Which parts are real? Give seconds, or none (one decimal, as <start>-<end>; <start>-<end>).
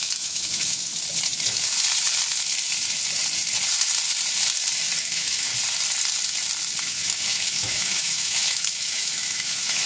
0.9-5.0; 5.5-6.8